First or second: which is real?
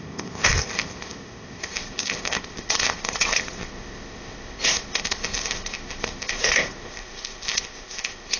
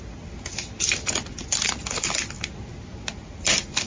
second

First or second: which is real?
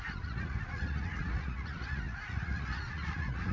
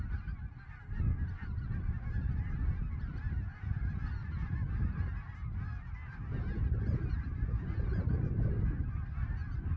second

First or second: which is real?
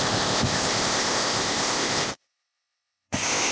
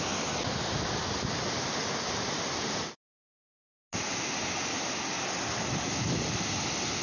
second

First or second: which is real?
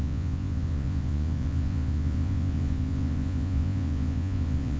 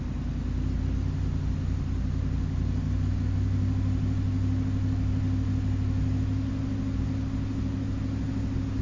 second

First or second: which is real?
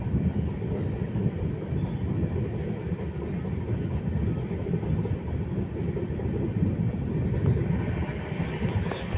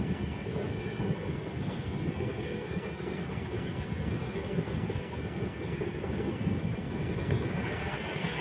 first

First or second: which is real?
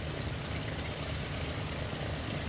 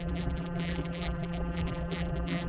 first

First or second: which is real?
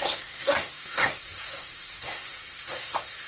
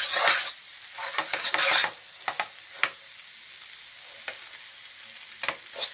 second